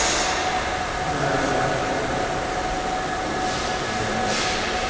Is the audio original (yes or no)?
no